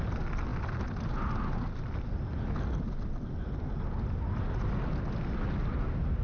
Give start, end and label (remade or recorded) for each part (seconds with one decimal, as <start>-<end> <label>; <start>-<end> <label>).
0.0-6.2 recorded